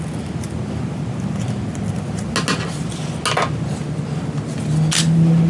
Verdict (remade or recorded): recorded